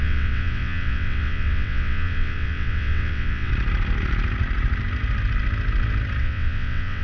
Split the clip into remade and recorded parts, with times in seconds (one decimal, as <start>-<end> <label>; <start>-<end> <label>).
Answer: 0.0-3.5 remade; 3.5-6.2 recorded; 6.2-7.0 remade